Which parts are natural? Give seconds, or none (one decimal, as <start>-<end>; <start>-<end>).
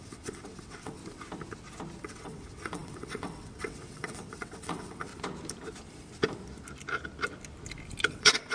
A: 1.0-2.0; 5.1-8.1